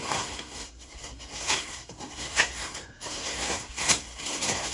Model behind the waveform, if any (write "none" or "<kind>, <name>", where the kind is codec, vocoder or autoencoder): codec, SNAC